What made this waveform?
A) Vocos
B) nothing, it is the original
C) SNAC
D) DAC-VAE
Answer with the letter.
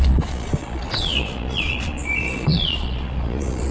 A